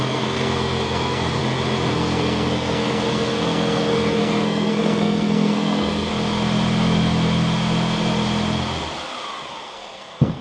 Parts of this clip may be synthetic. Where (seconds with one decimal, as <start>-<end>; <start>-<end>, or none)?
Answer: 0.0-1.4; 1.9-6.1; 9.6-10.4